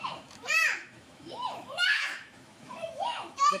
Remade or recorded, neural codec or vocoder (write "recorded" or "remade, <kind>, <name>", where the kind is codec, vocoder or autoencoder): remade, autoencoder, DAC-VAE